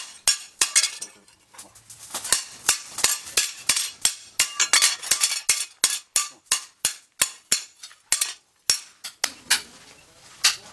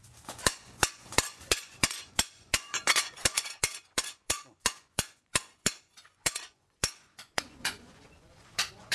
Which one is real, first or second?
first